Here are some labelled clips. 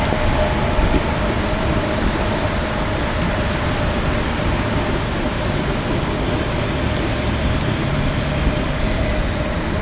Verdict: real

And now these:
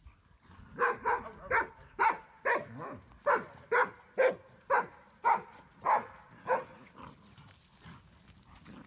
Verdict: real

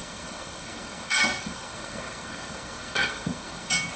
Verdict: fake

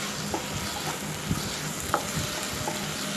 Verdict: real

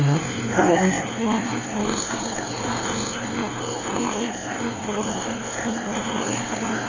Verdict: fake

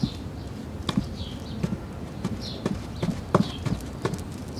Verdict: fake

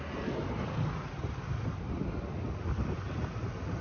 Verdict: real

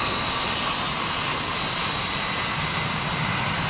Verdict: real